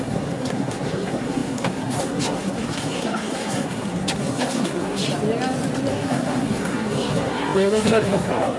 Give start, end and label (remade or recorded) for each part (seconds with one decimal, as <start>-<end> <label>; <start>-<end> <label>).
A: 0.0-5.0 remade; 5.0-5.9 recorded; 5.9-8.6 remade